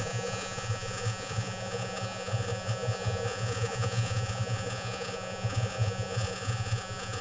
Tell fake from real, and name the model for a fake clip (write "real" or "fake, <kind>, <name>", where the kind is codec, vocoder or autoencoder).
fake, vocoder, Vocos